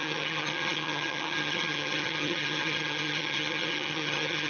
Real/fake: fake